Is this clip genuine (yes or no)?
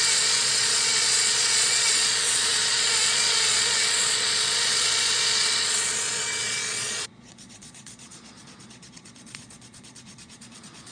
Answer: no